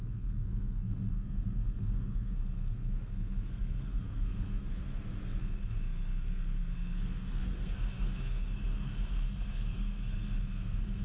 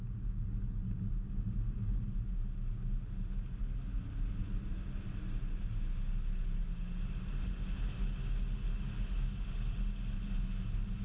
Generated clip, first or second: first